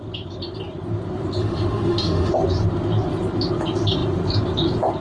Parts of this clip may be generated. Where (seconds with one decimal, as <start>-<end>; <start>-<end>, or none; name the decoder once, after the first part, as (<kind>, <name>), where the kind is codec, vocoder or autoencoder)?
1.4-2.3 (autoencoder, DAC-VAE)